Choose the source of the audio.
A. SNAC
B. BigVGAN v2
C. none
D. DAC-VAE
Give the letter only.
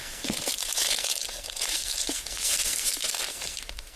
A